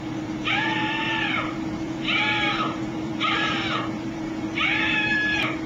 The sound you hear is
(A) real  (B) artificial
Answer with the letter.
B